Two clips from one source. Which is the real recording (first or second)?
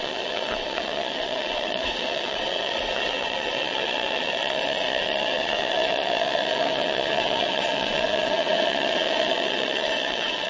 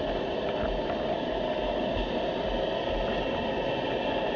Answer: second